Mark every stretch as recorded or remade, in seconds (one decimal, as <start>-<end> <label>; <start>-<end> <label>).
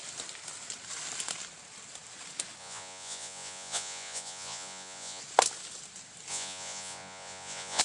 0.0-2.6 recorded; 2.6-5.2 remade; 5.2-6.3 recorded; 6.3-7.8 remade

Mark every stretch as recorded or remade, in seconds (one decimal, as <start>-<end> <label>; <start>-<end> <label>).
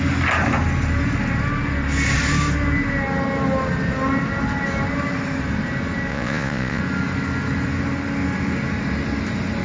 0.0-6.1 recorded; 6.1-6.8 remade; 6.8-9.6 recorded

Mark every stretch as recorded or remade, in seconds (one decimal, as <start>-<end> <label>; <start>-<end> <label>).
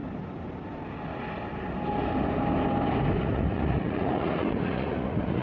0.0-3.2 recorded; 3.2-5.4 remade